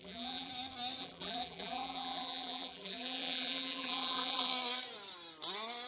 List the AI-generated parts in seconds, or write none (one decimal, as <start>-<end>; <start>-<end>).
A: 0.0-0.5; 1.0-4.5